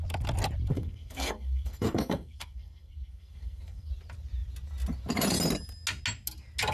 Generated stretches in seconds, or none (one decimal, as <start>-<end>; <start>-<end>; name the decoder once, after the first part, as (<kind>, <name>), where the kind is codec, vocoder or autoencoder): 0.7-3.9 (codec, SNAC)